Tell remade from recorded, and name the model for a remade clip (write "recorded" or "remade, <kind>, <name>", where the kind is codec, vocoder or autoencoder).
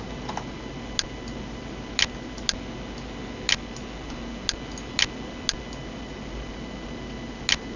recorded